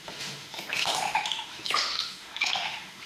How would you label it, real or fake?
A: fake